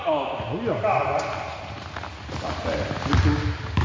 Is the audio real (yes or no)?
yes